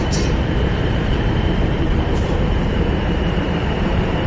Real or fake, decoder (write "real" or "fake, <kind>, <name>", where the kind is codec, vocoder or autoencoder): fake, vocoder, BigVGAN v2